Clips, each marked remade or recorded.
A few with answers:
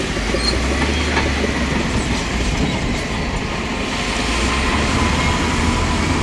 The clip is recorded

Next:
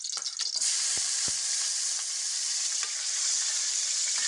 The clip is recorded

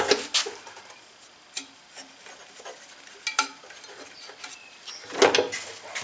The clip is recorded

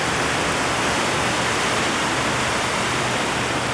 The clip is recorded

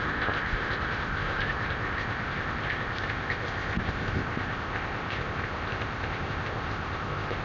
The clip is remade